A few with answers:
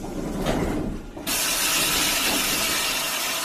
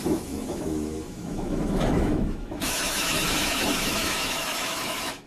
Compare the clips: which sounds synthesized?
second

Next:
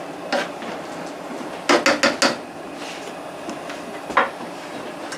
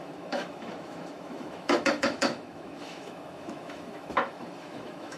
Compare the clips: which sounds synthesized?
second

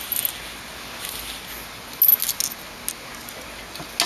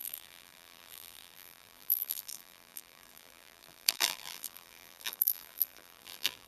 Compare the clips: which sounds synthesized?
second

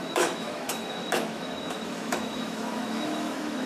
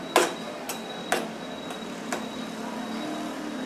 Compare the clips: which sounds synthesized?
first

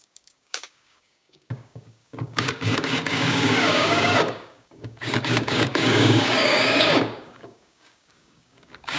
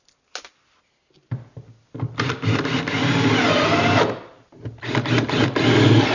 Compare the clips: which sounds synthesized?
first